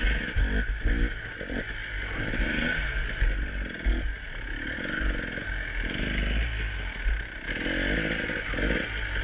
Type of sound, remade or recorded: recorded